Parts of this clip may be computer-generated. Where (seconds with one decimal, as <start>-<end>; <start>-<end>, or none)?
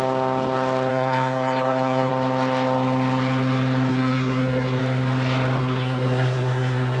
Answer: 0.9-2.1; 3.9-4.8; 5.6-7.0